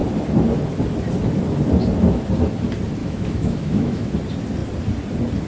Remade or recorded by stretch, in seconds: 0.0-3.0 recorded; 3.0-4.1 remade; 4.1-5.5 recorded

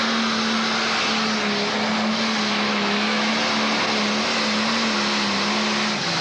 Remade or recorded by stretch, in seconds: 0.0-2.7 recorded; 2.7-3.3 remade; 3.3-6.2 recorded